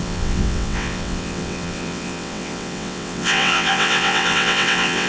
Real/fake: fake